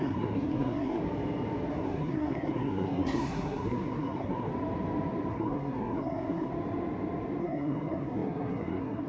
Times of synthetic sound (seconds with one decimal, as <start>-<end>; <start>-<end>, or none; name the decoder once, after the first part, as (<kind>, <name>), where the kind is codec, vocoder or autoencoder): 0.0-1.0 (codec, SNAC); 1.7-4.5; 5.3-6.5; 7.4-9.1